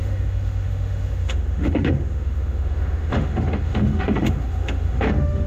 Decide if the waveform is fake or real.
fake